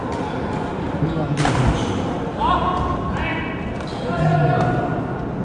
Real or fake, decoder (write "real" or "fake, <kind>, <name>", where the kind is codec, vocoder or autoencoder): real